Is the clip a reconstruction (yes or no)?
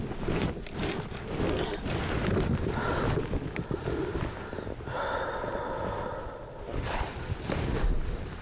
no